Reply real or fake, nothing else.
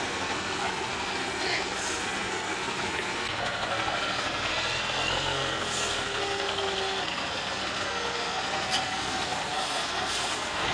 fake